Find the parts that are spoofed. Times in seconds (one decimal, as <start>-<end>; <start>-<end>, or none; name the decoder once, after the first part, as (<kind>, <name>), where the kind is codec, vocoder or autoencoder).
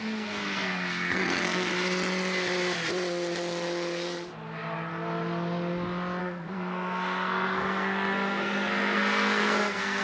0.0-1.7 (codec, SNAC); 6.2-10.0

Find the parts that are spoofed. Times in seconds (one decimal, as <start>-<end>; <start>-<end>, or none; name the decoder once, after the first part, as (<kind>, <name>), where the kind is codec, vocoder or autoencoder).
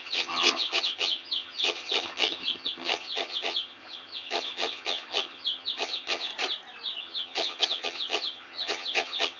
0.0-6.3 (vocoder, HiFi-GAN); 7.0-9.4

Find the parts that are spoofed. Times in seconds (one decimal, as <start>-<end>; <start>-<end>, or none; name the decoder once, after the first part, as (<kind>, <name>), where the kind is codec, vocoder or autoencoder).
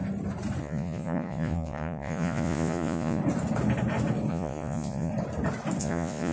0.6-3.2 (vocoder, Vocos); 4.3-5.1; 5.8-6.3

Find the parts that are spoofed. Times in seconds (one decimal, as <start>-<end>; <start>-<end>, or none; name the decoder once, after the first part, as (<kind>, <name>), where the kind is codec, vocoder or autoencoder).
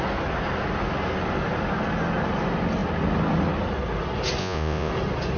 4.4-4.9 (vocoder, Vocos)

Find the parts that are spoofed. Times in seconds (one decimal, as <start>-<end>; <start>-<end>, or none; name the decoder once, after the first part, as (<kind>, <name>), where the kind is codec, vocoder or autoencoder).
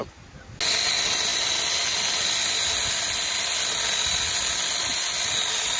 none